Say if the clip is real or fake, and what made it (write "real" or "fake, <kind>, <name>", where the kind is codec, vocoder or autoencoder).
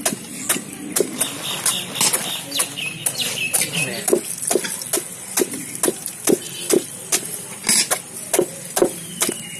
real